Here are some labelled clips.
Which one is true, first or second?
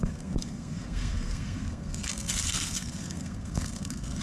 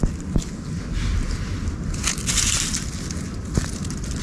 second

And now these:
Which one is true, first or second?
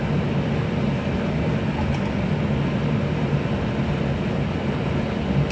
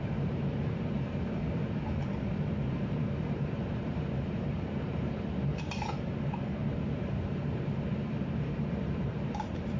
first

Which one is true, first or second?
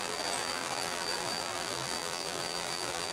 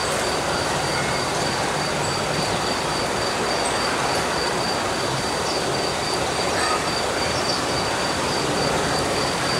second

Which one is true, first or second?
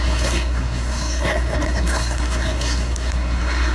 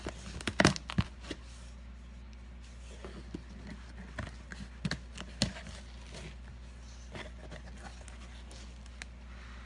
second